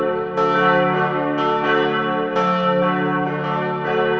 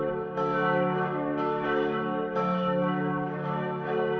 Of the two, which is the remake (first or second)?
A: second